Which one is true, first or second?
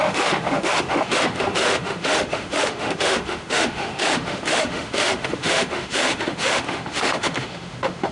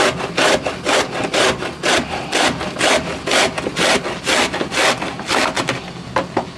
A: second